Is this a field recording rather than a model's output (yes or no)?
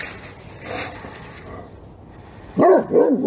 yes